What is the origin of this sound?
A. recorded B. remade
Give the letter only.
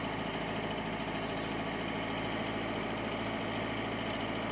A